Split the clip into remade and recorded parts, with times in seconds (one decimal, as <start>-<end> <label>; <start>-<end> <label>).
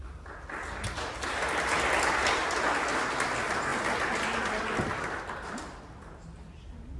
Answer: 0.0-7.0 recorded